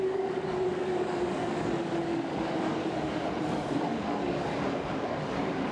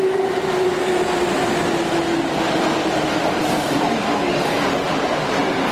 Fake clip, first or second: first